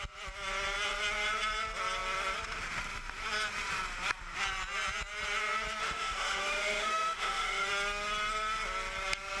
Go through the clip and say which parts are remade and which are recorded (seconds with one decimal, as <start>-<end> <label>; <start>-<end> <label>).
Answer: 0.0-5.8 recorded; 5.8-7.7 remade; 7.7-9.4 recorded